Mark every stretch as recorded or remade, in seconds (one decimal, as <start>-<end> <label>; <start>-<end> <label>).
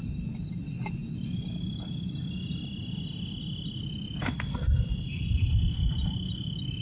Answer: 0.0-6.8 recorded